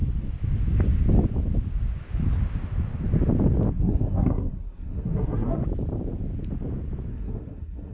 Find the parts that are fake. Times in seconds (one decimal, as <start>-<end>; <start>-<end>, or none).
3.7-5.6; 7.1-7.9